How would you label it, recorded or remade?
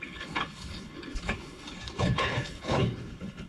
remade